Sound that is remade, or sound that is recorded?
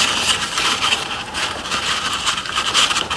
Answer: remade